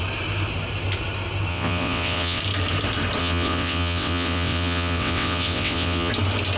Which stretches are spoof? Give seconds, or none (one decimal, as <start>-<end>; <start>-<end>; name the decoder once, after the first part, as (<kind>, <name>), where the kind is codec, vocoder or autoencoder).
1.5-2.4 (vocoder, WaveNeXt); 3.2-6.1